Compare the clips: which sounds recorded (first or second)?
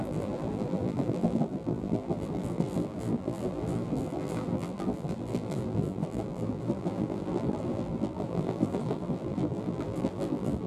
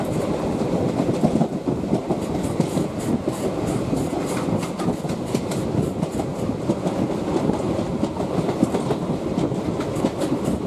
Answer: second